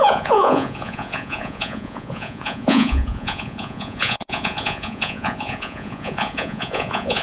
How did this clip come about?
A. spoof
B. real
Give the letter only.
A